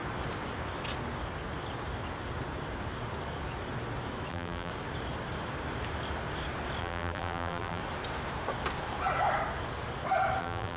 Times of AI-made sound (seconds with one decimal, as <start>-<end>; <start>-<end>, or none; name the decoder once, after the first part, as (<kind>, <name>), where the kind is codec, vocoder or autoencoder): 4.3-4.7 (vocoder, BigVGAN v2); 6.8-7.8; 10.4-10.8